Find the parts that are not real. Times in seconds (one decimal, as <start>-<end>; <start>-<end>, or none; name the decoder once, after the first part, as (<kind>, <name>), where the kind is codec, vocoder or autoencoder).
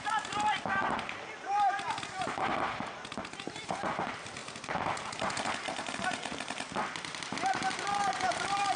none